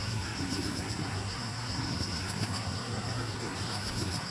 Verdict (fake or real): fake